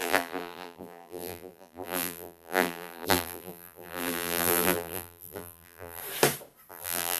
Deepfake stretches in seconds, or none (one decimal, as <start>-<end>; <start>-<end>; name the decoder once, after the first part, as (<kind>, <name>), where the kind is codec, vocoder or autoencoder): 0.0-6.0 (vocoder, BigVGAN v2); 6.7-7.2